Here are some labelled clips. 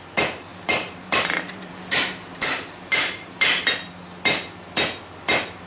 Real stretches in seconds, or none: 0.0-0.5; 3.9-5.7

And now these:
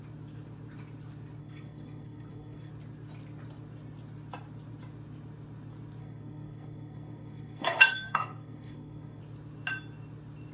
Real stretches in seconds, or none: 0.0-1.4; 2.7-6.0; 9.2-10.5

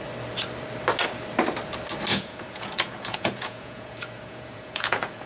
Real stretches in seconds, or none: 0.0-2.1

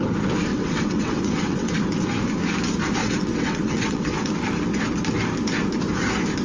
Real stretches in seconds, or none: 0.0-0.5; 1.7-3.0; 4.3-6.4

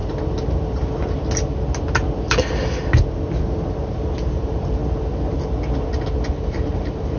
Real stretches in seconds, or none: 0.0-4.3; 4.8-6.3

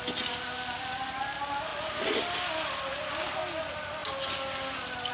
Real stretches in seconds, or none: 0.0-5.1